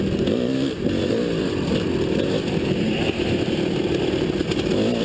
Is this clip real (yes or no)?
yes